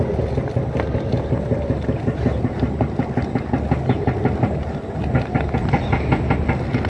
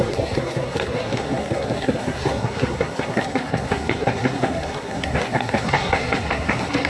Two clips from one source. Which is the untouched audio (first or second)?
first